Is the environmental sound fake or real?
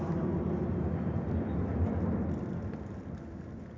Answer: real